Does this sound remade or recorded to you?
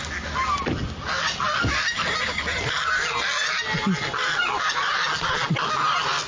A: recorded